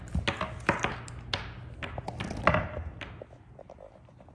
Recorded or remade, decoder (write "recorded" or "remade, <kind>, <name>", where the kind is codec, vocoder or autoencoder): recorded